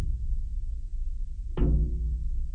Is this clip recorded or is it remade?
recorded